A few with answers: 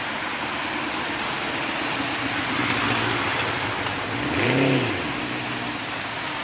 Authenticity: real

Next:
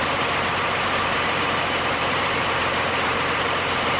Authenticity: fake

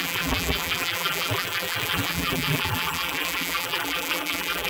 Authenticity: fake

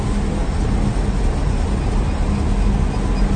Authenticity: real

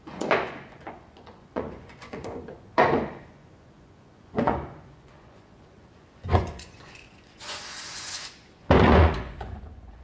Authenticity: fake